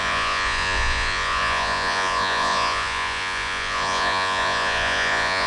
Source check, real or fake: fake